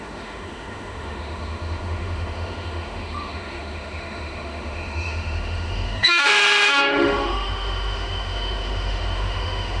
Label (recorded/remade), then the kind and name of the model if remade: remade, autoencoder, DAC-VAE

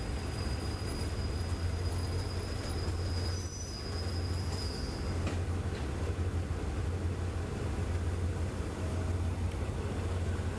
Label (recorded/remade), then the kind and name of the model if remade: recorded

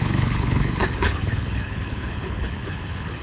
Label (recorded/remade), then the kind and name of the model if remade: remade, codec, HILCodec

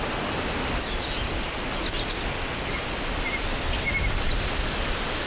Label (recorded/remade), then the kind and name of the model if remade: recorded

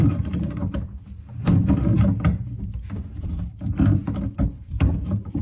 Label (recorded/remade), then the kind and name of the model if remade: remade, vocoder, BigVGAN v2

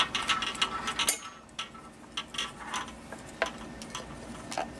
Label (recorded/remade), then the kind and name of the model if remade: recorded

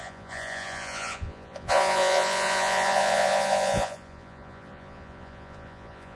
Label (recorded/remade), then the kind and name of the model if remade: remade, vocoder, Vocos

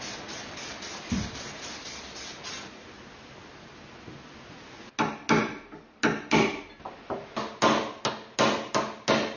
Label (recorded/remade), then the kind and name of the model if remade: recorded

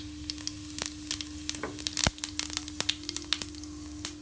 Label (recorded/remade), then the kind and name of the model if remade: recorded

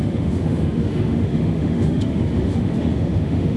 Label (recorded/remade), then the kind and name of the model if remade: remade, autoencoder, DAC-VAE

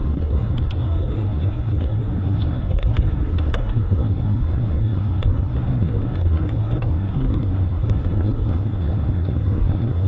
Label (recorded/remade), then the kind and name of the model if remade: remade, codec, SNAC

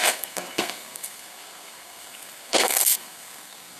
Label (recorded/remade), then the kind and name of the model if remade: remade, codec, SNAC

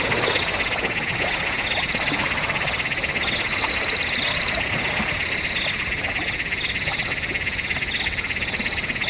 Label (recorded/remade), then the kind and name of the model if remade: recorded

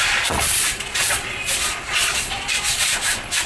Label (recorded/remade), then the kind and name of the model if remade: remade, vocoder, Vocos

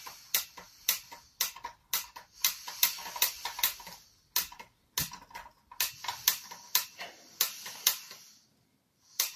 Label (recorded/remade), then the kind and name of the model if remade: recorded